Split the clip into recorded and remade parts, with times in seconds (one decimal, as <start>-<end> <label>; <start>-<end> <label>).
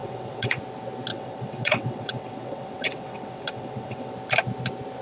0.0-0.6 remade; 0.6-1.1 recorded; 1.1-4.1 remade; 4.1-5.0 recorded